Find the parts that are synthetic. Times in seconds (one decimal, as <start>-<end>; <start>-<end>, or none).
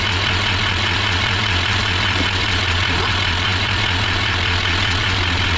0.0-5.6